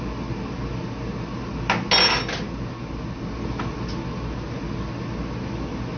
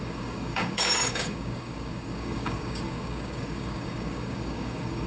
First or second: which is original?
first